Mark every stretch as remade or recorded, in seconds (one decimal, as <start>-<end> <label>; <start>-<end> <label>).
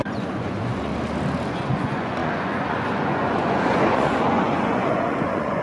0.0-0.9 remade; 0.9-1.5 recorded; 1.5-5.6 remade